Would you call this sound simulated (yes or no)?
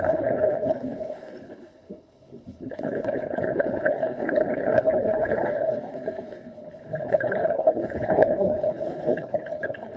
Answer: yes